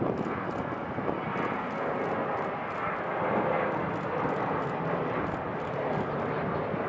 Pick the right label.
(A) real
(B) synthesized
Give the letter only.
A